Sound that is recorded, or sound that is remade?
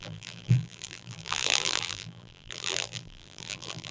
remade